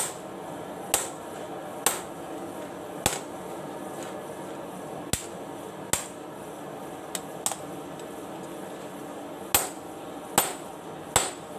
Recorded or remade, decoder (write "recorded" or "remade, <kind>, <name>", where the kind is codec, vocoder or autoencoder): recorded